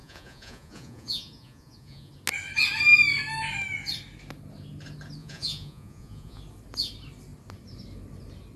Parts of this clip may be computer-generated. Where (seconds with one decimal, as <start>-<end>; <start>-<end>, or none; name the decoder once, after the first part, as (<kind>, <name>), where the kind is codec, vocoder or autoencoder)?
0.0-2.1 (vocoder, Vocos); 5.2-6.4